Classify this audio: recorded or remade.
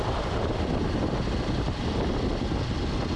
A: recorded